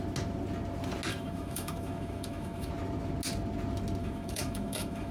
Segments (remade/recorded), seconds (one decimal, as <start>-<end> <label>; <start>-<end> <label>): 0.0-1.1 recorded; 1.1-2.7 remade; 2.7-4.0 recorded; 4.0-5.1 remade